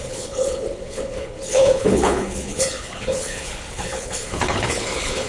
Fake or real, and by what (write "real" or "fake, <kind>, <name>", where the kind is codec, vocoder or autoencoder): fake, codec, HILCodec